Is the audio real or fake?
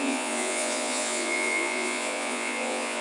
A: fake